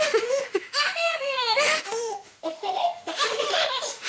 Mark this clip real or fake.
fake